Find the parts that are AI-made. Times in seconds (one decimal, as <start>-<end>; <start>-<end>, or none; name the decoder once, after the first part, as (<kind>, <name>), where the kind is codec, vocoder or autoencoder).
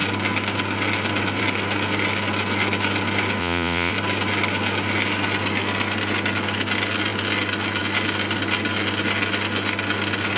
3.4-3.9 (vocoder, Vocos)